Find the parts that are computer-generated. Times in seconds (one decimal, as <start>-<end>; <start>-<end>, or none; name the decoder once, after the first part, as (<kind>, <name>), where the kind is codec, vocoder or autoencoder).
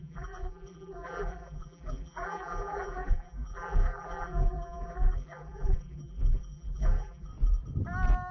0.0-7.3 (vocoder, BigVGAN v2)